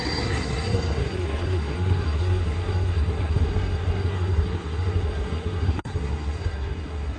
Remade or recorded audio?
remade